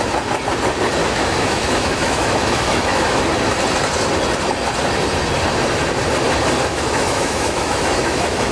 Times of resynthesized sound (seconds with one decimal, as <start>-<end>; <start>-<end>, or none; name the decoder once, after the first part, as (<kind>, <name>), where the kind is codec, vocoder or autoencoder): 1.0-3.2 (autoencoder, DAC-VAE); 6.7-8.5

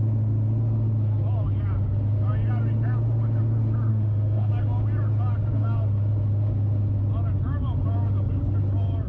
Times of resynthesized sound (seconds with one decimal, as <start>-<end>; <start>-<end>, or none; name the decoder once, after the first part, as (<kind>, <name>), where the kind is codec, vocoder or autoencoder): 3.9-4.5 (autoencoder, DAC-VAE)

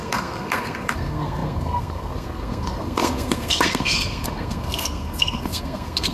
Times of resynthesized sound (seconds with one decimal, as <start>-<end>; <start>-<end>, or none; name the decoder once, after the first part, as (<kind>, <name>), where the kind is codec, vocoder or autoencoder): 0.0-6.1 (codec, SNAC)

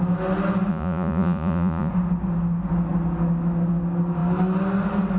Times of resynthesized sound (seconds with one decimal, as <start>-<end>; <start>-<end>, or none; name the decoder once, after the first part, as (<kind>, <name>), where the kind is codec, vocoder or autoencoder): 0.7-1.9 (vocoder, Vocos)